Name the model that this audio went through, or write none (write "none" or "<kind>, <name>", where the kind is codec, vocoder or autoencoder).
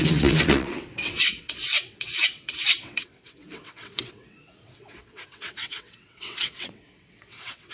vocoder, WaveNeXt